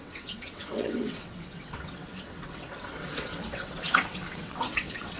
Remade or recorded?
remade